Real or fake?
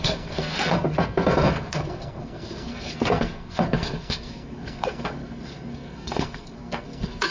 fake